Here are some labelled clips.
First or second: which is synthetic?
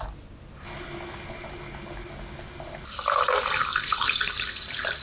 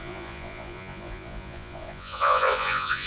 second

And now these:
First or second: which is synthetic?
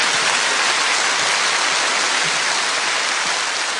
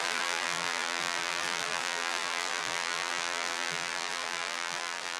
second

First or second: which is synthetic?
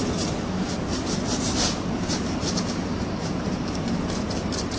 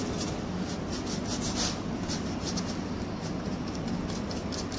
first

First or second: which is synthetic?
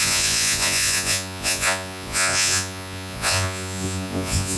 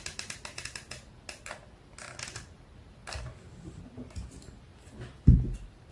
first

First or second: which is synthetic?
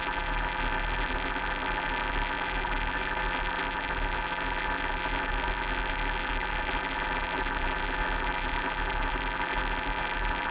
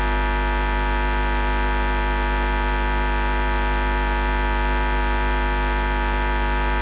first